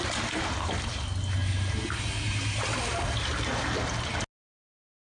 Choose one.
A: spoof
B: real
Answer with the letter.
B